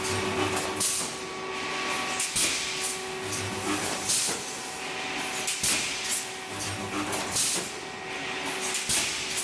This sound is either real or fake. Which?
real